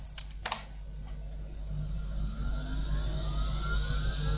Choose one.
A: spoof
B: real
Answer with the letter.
B